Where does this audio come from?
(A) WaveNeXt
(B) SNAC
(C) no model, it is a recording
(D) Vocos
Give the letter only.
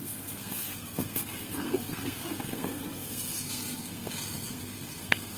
B